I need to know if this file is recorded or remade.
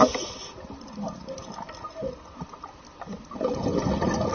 recorded